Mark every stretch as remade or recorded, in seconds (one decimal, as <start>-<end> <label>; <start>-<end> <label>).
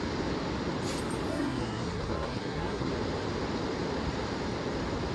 0.0-1.3 recorded; 1.3-2.9 remade; 2.9-5.1 recorded